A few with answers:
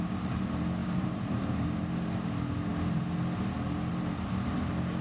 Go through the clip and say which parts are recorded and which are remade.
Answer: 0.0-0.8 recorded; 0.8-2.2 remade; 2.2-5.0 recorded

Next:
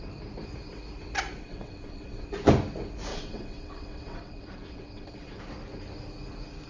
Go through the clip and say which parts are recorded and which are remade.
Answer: 0.0-1.4 recorded; 1.4-2.2 remade; 2.2-3.1 recorded; 3.1-5.4 remade; 5.4-6.7 recorded

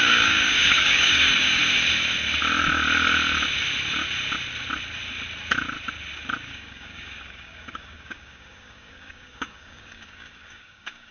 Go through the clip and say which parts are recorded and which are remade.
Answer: 0.0-1.6 remade; 1.6-6.5 recorded; 6.5-11.1 remade

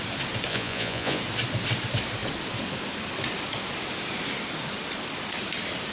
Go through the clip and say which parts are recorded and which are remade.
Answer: 0.0-0.5 recorded; 0.5-1.2 remade; 1.2-5.9 recorded

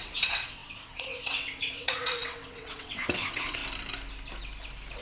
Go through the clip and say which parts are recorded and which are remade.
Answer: 0.0-3.6 remade; 3.6-5.0 recorded

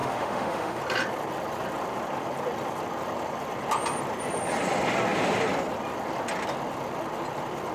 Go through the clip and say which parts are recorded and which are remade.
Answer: 0.0-0.8 remade; 0.8-7.7 recorded

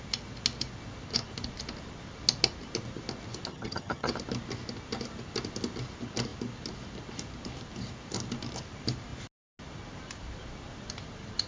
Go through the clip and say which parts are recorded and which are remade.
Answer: 0.0-3.5 recorded; 3.5-4.1 remade; 4.1-11.5 recorded

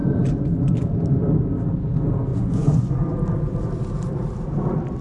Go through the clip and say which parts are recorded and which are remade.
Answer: 0.0-2.3 recorded; 2.3-2.9 remade; 2.9-5.0 recorded